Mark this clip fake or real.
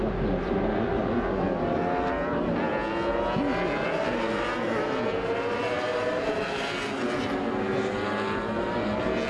real